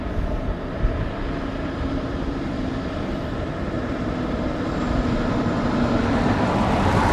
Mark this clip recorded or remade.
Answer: remade